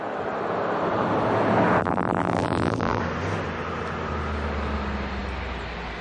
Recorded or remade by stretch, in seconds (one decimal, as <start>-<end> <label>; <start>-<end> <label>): 0.0-1.8 recorded; 1.8-3.0 remade; 3.0-6.0 recorded